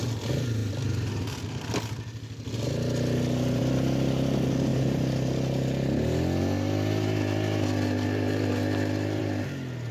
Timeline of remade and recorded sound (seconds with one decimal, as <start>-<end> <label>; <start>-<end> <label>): 0.0-9.9 recorded